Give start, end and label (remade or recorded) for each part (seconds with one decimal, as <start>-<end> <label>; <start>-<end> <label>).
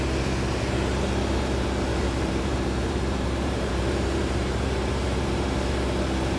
0.0-1.9 recorded; 1.9-5.7 remade; 5.7-6.4 recorded